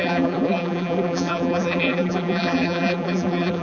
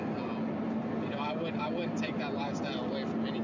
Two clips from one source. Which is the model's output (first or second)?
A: first